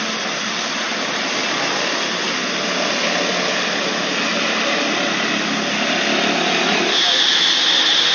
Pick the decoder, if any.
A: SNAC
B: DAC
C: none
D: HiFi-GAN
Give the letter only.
C